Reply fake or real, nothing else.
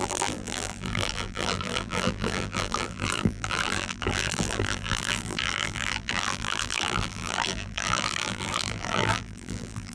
fake